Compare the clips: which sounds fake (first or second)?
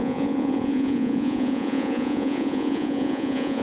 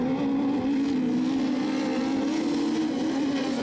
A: first